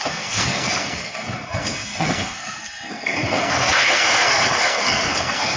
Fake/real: fake